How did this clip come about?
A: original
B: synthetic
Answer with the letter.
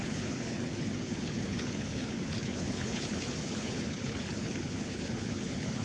B